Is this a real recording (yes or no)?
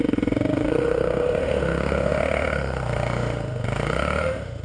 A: no